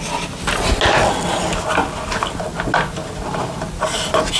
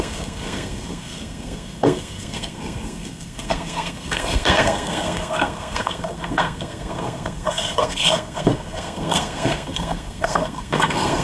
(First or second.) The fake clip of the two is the second